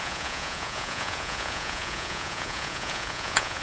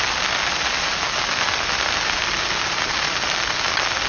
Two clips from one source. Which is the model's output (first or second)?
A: first